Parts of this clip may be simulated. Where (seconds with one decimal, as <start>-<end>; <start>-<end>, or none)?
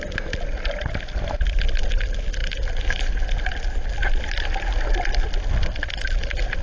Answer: none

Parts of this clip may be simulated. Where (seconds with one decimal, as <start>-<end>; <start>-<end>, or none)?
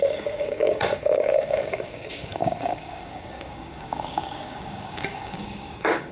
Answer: 0.0-6.1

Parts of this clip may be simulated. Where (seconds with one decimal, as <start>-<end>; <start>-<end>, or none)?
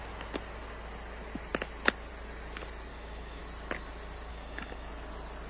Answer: 2.9-3.4; 4.3-4.9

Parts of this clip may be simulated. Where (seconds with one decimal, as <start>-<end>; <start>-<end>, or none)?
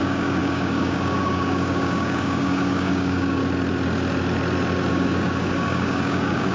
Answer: 0.0-3.4; 4.9-6.5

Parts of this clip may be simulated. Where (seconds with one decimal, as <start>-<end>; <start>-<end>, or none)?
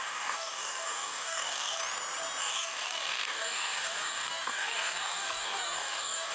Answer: 0.0-1.8; 2.4-6.3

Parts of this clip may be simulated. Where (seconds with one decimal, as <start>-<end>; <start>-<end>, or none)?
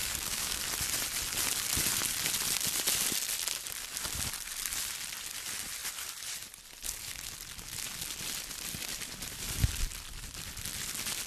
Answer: 0.0-0.6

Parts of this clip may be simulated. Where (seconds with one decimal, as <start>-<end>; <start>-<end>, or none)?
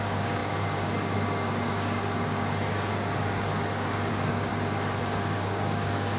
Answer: 0.0-4.5; 5.0-6.2